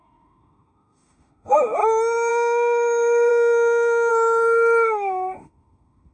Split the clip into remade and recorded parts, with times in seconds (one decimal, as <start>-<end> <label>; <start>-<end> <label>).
0.0-1.8 remade; 1.8-2.3 recorded; 2.3-3.3 remade; 3.3-4.1 recorded; 4.1-6.1 remade